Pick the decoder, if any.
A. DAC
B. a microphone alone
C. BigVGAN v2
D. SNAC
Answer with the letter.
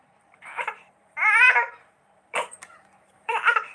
C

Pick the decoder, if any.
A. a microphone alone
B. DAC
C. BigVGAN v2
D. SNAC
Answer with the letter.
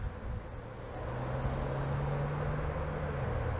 A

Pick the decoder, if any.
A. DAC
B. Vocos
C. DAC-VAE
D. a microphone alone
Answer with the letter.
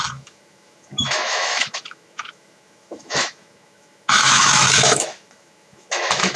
C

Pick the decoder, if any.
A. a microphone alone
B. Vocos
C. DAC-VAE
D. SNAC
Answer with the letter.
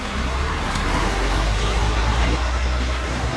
D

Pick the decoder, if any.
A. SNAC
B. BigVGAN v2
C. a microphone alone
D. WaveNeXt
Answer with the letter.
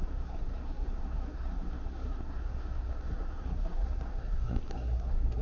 A